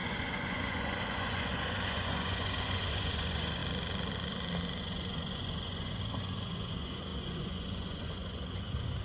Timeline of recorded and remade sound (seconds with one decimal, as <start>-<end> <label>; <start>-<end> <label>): 0.0-3.6 remade; 3.6-4.8 recorded; 4.8-9.0 remade